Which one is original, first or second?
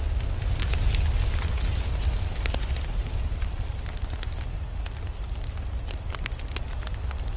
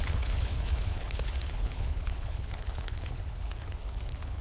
first